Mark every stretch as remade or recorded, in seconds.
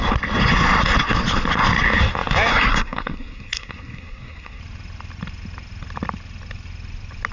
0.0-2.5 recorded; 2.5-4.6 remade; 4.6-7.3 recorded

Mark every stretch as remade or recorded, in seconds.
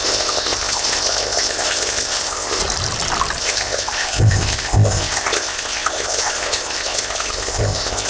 0.0-2.6 remade; 2.6-3.4 recorded; 3.4-8.1 remade